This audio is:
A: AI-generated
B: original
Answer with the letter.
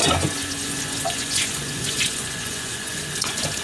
A